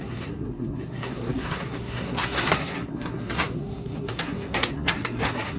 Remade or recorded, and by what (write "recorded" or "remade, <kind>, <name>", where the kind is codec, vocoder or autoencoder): remade, codec, SNAC